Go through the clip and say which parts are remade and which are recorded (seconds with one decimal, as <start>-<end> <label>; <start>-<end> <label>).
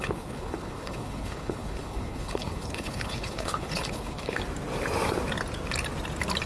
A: 0.0-4.4 remade; 4.4-6.5 recorded